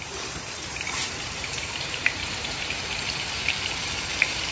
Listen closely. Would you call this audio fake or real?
fake